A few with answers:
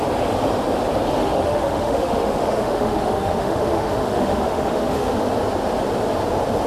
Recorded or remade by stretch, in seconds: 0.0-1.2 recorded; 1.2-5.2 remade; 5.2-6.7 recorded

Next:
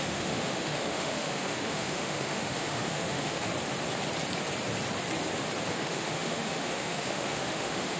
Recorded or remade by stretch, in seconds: 0.0-3.5 remade; 3.5-5.7 recorded; 5.7-8.0 remade

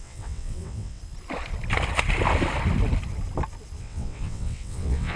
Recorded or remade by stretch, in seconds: 0.0-1.0 remade; 1.0-3.8 recorded; 3.8-5.2 remade

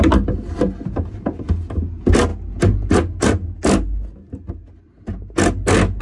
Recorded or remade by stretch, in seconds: 0.0-6.0 recorded